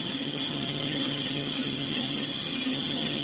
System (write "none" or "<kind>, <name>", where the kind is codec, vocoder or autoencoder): vocoder, HiFi-GAN